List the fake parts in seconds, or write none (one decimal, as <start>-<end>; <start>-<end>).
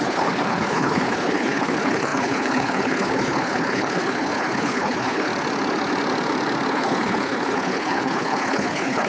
0.0-5.3; 6.7-9.1